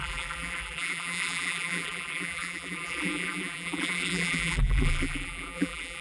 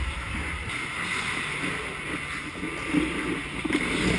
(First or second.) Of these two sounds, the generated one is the first